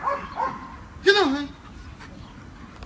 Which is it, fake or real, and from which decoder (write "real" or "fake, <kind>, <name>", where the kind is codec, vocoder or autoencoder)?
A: real